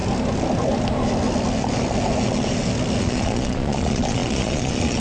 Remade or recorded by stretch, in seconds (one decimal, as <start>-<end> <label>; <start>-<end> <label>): 0.0-3.0 recorded; 3.0-5.0 remade